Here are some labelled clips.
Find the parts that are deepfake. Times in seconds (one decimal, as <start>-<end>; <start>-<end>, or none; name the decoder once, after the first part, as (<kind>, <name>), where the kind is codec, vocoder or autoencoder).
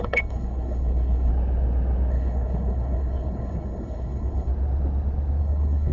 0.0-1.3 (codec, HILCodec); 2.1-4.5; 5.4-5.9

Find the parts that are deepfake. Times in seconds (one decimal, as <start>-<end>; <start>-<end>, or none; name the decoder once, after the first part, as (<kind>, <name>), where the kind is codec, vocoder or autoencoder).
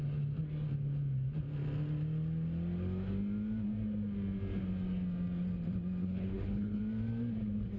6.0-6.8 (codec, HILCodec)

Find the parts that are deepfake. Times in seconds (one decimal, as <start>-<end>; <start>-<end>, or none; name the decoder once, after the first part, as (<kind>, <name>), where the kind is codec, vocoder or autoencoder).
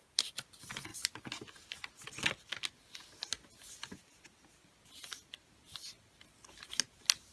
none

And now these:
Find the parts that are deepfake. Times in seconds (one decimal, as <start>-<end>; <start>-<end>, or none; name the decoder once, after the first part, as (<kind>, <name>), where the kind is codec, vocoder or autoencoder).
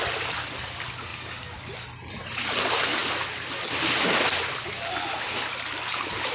none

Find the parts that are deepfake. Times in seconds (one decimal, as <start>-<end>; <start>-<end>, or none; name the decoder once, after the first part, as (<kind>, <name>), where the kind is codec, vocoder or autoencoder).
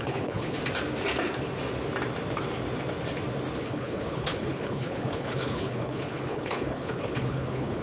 0.0-0.6 (codec, HILCodec); 3.6-7.8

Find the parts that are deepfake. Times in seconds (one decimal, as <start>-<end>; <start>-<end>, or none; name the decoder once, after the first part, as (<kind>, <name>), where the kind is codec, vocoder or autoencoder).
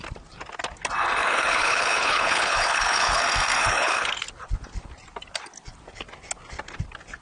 1.2-3.2 (codec, HILCodec); 3.6-4.1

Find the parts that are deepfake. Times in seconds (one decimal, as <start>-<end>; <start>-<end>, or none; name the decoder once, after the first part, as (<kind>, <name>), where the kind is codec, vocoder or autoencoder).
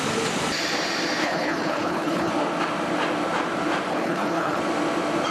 1.2-2.3 (codec, HILCodec); 3.9-4.6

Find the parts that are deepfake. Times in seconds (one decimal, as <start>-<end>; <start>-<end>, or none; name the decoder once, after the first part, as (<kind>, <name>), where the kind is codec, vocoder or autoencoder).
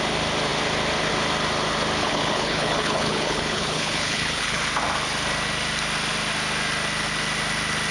2.0-4.6 (codec, HILCodec)